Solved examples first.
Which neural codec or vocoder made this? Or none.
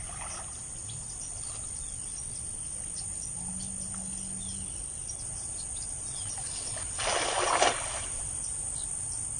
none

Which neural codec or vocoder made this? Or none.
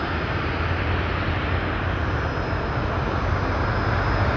none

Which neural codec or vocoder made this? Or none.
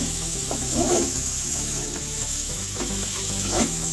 autoencoder, DAC-VAE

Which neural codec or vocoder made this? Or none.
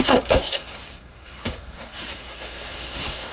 codec, SNAC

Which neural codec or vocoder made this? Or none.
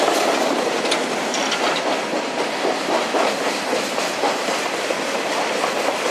none